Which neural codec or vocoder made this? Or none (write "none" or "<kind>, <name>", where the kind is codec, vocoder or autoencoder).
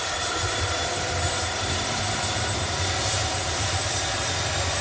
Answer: vocoder, BigVGAN v2